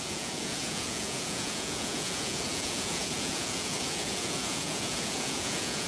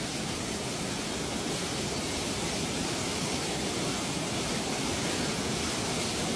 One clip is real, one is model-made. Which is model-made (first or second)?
first